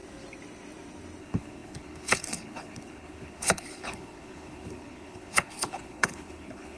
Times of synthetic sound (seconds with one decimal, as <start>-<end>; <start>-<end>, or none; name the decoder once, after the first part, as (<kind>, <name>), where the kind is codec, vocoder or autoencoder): 1.2-6.8 (codec, HILCodec)